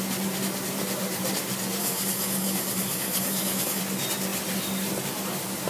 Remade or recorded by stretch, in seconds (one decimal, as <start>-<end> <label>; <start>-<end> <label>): 0.0-1.8 recorded; 1.8-3.8 remade; 3.8-5.7 recorded